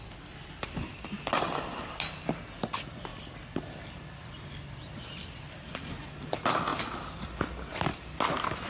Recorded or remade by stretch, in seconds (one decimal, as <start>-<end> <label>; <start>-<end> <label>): 0.0-8.7 recorded